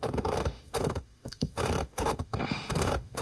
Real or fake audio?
fake